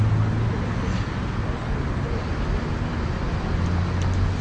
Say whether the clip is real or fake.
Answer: real